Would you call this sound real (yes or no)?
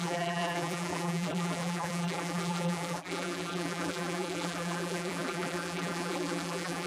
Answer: no